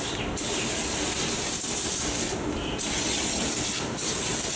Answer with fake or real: real